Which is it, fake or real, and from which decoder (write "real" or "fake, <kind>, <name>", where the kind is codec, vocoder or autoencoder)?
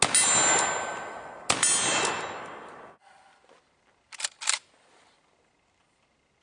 real